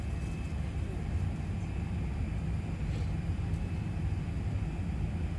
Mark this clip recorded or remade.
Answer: recorded